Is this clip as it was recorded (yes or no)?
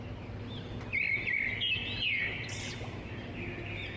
yes